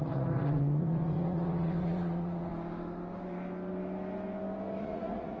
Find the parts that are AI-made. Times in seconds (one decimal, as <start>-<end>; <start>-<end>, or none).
0.0-2.5; 4.8-5.4